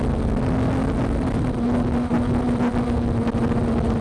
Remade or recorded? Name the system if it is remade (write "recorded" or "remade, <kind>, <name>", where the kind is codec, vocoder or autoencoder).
recorded